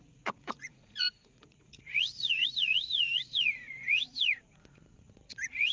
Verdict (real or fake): fake